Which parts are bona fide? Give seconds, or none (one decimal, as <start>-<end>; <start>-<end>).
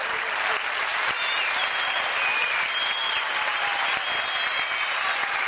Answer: 0.0-0.9; 4.0-5.5